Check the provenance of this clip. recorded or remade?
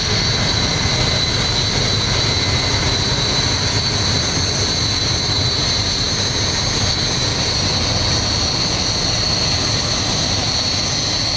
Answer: recorded